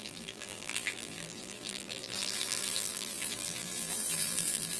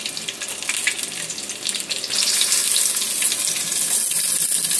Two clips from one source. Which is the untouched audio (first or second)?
second